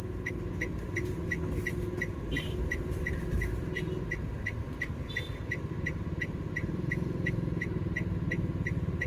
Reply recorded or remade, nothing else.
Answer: recorded